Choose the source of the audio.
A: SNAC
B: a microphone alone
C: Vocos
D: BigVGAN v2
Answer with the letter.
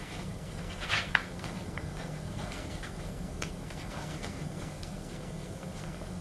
A